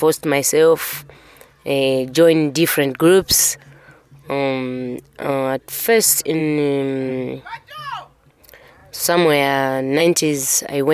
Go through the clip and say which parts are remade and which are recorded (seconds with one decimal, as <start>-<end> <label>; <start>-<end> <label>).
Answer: 0.0-10.9 recorded